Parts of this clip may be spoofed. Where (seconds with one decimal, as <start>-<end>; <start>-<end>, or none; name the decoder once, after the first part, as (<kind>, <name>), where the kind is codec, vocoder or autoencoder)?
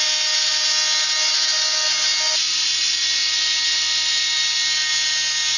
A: none